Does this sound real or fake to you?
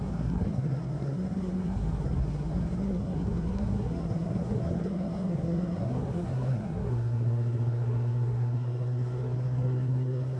fake